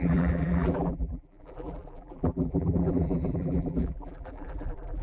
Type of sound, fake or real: fake